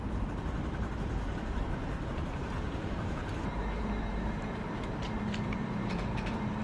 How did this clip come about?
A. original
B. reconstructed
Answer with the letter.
B